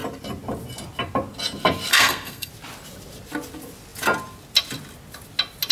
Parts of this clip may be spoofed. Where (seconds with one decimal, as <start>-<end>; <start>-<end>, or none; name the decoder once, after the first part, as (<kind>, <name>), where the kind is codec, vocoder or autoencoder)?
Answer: 1.9-2.5 (codec, SNAC)